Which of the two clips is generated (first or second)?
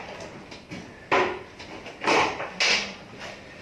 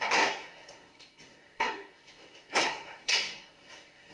second